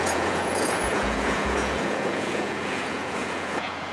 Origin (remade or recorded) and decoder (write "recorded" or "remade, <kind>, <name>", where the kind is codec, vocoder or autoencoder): remade, vocoder, Vocos